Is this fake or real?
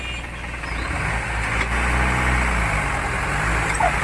real